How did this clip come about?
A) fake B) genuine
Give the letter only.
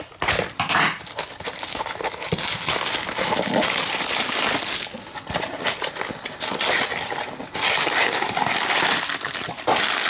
B